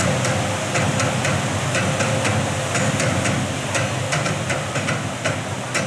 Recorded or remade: recorded